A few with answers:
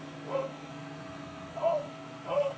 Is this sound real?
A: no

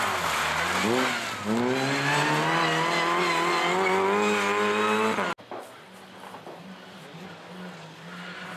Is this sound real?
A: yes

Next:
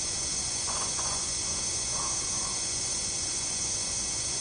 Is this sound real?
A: no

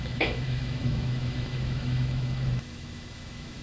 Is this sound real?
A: no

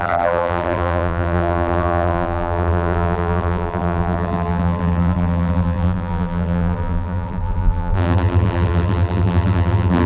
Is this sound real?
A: no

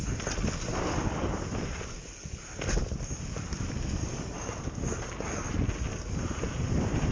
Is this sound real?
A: yes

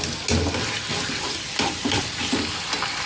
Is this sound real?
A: yes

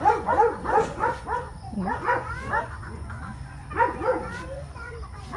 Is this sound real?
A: no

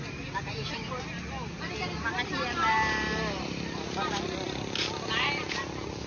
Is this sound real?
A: yes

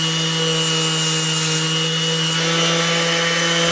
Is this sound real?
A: yes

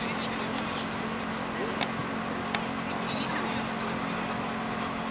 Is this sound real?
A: yes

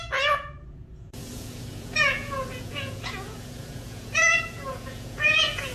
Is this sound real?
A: no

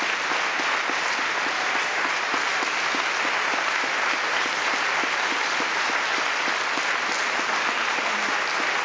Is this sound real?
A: yes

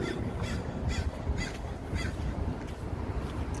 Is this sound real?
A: yes